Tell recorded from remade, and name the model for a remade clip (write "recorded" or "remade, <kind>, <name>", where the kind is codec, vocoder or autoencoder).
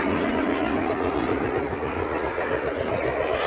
remade, vocoder, Vocos